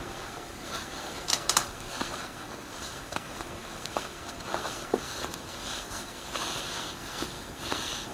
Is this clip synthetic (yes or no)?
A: yes